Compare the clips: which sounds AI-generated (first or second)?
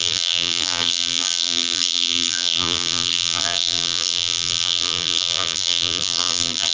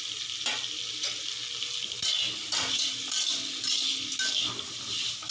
first